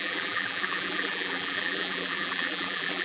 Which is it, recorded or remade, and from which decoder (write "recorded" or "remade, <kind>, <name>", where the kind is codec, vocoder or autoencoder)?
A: remade, vocoder, BigVGAN v2